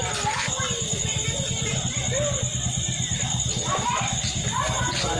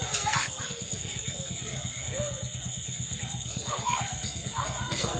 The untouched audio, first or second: first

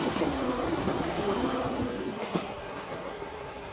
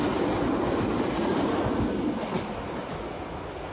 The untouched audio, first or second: second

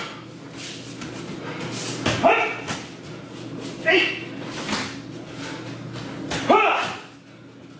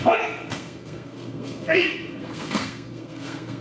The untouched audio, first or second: first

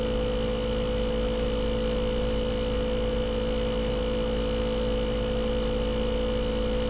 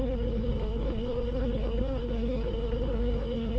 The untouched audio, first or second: first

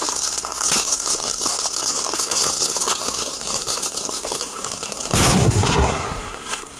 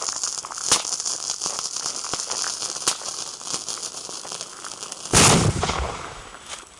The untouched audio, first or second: second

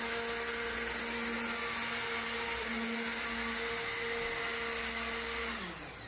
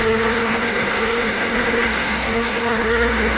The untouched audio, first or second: first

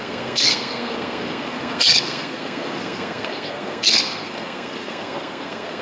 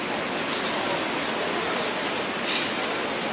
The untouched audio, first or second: second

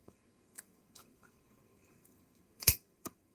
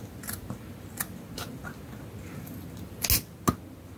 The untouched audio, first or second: second